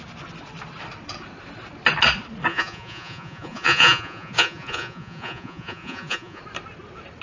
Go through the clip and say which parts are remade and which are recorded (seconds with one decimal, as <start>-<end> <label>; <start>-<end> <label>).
0.0-2.5 recorded; 2.5-6.4 remade; 6.4-7.2 recorded